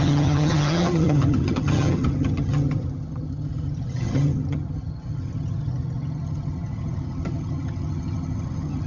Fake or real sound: fake